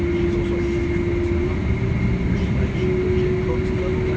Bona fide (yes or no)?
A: yes